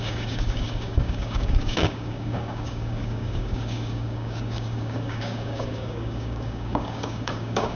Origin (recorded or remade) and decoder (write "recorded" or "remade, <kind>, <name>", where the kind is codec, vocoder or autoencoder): remade, codec, DAC